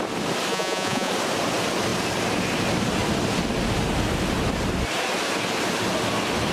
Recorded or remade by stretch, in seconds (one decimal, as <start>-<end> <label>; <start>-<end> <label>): 0.0-0.5 recorded; 0.5-1.1 remade; 1.1-6.5 recorded